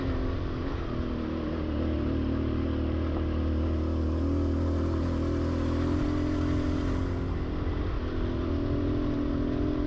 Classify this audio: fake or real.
real